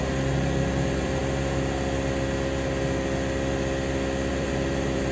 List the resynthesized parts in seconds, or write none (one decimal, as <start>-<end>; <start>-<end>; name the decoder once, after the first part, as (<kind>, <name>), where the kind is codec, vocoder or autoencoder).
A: 0.0-1.2 (vocoder, BigVGAN v2); 4.3-5.1